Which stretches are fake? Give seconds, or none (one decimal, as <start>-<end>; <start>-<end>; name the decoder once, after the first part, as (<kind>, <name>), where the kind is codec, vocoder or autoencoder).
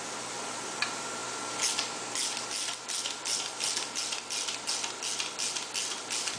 none